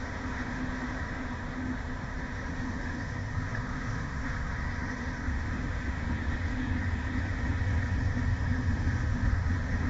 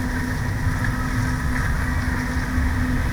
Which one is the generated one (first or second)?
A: first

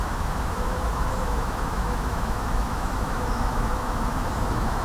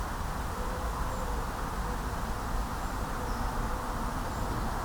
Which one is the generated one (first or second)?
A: first